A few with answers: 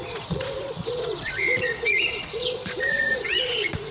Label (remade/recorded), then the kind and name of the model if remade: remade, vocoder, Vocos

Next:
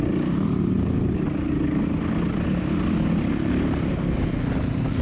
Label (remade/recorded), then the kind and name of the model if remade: recorded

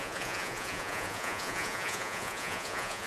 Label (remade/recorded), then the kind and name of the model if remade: remade, vocoder, Vocos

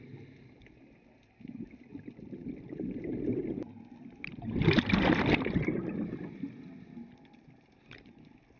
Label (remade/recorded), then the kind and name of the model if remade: recorded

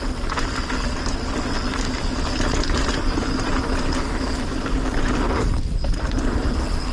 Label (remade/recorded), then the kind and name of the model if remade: recorded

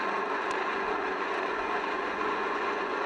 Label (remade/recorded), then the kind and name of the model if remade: remade, vocoder, Vocos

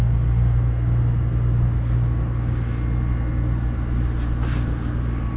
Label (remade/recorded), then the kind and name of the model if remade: recorded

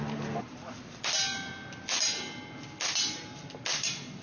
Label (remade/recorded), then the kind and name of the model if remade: recorded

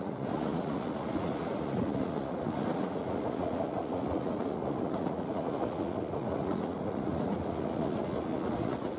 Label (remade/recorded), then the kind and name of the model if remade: remade, vocoder, Vocos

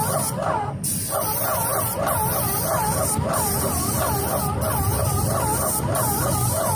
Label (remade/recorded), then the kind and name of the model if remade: recorded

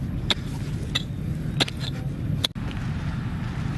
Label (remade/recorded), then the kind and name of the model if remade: recorded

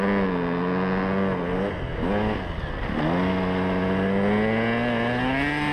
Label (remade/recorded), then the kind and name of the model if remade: recorded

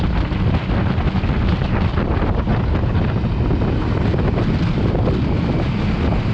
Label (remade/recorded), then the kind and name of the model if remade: recorded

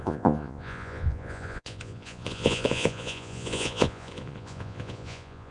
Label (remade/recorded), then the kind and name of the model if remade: remade, vocoder, Vocos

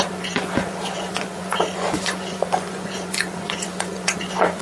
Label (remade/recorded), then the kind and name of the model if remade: remade, vocoder, Vocos